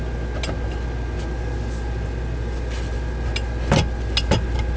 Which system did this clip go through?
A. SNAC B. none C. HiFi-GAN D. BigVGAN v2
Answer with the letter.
B